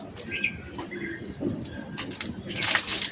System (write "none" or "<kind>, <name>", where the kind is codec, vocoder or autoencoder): none